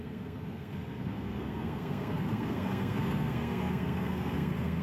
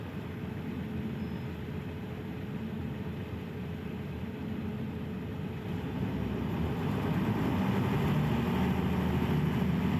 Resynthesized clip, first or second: first